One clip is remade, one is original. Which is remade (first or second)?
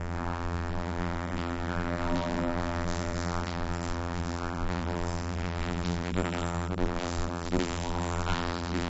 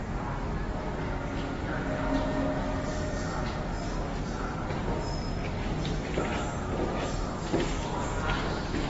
first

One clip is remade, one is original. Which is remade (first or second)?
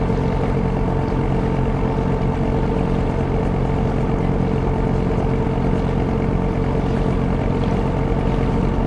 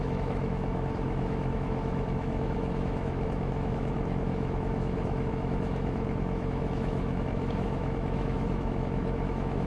second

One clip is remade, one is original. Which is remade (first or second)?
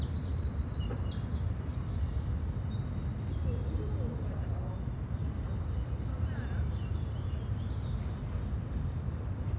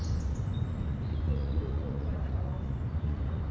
second